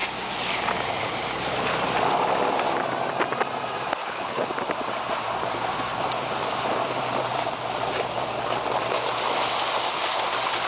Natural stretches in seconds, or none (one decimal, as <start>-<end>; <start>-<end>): 0.0-4.0; 4.5-10.7